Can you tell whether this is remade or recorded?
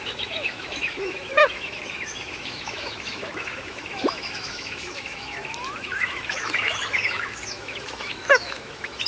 remade